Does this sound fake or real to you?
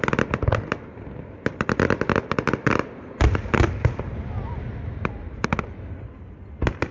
real